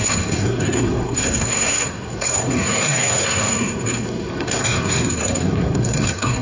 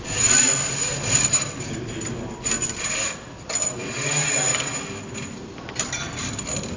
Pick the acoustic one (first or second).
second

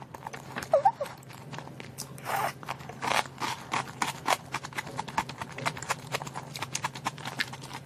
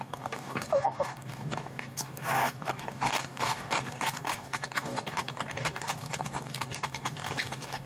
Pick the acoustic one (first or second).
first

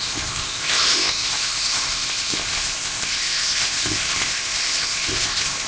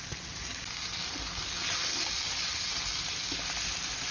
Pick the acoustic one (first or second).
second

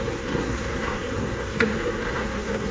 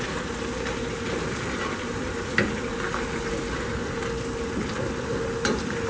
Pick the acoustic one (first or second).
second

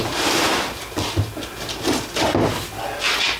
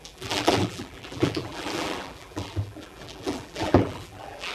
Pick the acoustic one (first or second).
first